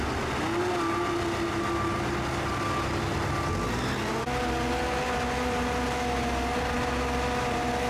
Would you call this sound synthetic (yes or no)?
no